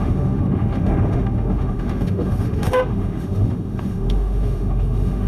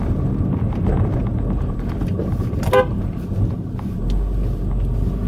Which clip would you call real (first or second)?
second